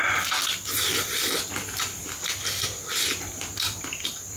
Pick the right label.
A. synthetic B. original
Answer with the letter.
B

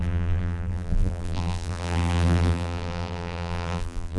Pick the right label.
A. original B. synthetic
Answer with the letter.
B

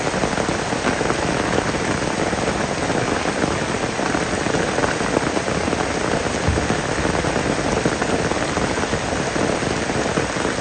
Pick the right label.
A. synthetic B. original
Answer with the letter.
B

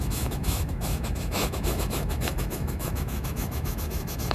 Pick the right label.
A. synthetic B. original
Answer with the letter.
A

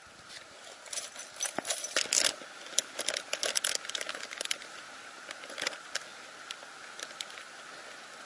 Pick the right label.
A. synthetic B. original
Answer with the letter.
B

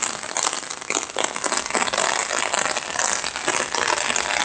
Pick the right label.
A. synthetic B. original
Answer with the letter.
B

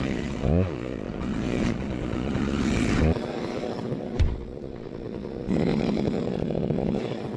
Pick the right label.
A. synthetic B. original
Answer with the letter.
A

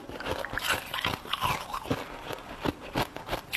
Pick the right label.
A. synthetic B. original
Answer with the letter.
B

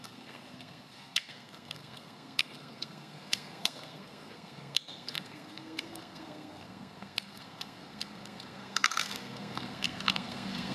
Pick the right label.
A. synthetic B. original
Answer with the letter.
A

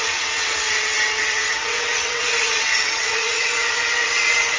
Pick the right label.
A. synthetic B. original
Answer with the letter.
A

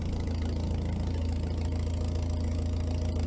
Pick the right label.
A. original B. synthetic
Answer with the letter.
A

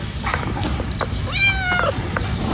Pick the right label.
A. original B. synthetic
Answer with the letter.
A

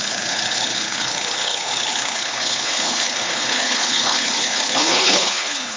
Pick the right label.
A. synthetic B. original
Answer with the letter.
A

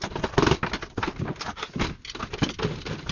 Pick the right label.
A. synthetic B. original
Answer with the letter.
B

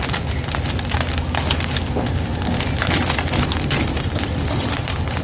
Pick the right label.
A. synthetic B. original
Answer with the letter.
B